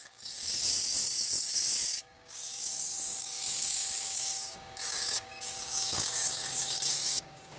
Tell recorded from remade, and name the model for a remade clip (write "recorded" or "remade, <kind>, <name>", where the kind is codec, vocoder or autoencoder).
remade, codec, DAC